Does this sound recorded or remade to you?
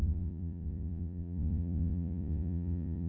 remade